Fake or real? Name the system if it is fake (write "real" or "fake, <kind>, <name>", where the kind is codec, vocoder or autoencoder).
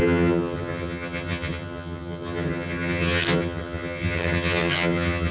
fake, vocoder, HiFi-GAN